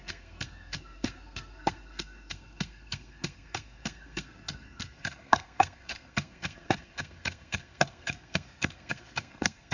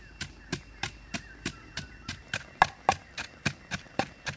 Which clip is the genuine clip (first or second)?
second